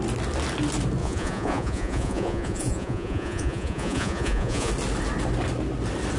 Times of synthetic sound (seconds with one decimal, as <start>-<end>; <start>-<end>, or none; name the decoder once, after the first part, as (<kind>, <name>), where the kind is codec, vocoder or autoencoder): 1.0-4.7 (vocoder, Vocos)